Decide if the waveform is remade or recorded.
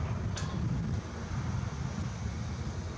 recorded